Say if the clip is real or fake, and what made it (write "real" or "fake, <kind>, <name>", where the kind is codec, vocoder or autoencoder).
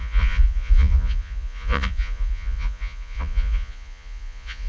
fake, vocoder, Vocos